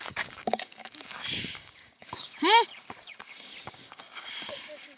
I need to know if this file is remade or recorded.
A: remade